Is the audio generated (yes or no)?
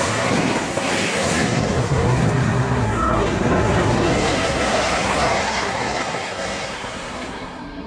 yes